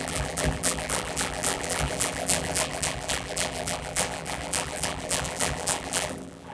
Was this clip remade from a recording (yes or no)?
yes